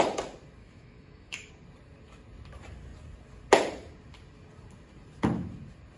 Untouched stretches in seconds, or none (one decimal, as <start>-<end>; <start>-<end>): 0.0-0.6; 1.5-6.0

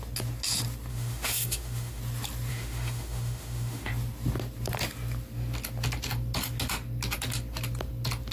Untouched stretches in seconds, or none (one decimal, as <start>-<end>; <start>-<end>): 0.0-0.9; 2.0-2.5; 3.9-8.3

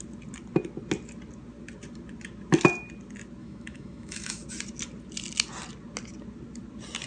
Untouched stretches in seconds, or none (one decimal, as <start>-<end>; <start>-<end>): 0.0-3.4; 4.4-7.1